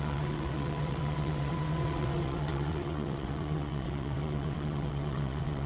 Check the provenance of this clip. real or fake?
fake